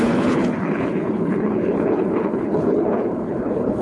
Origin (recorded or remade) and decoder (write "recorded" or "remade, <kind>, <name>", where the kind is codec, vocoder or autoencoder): remade, codec, HILCodec